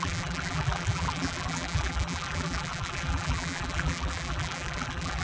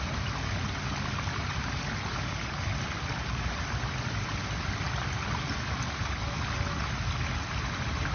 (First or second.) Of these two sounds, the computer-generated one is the first